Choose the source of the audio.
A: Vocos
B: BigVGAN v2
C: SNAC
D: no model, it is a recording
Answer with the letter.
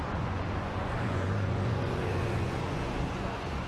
A